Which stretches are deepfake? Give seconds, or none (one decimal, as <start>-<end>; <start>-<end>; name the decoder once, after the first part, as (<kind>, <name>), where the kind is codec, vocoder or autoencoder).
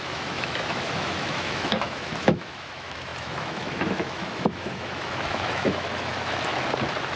0.0-6.5 (autoencoder, DAC-VAE)